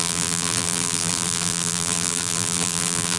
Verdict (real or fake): fake